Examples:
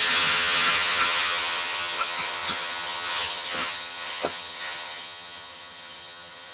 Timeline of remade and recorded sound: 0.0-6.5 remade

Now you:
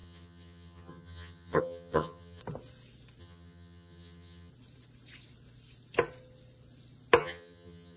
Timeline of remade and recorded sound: 0.0-2.4 remade; 2.4-3.2 recorded; 3.2-4.5 remade; 4.5-7.2 recorded; 7.2-8.0 remade

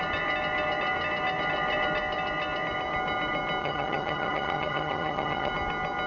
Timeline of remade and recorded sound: 0.0-3.6 recorded; 3.6-5.5 remade; 5.5-6.1 recorded

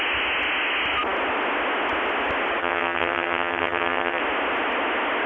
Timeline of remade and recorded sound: 0.0-2.6 recorded; 2.6-4.2 remade; 4.2-5.3 recorded